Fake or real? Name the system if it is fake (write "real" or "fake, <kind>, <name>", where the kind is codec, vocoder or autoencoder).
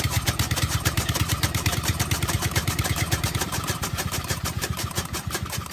fake, vocoder, BigVGAN v2